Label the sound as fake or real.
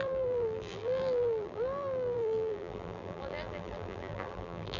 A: fake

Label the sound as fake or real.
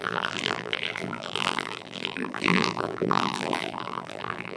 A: fake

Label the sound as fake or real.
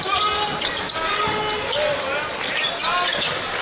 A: real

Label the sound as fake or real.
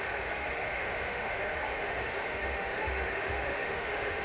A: fake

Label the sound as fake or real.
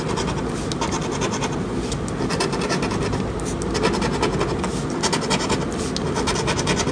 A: real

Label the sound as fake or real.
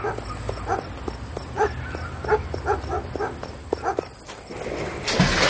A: real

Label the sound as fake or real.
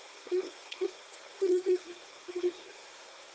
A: fake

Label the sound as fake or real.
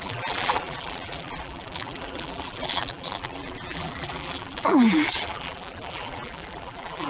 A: fake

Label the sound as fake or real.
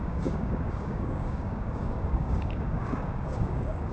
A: fake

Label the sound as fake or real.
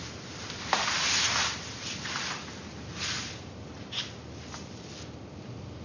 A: real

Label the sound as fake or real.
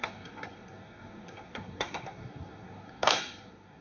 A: fake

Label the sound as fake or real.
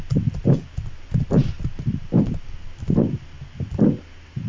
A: real